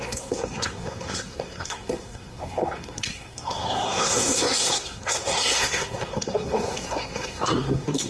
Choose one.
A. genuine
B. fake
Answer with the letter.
B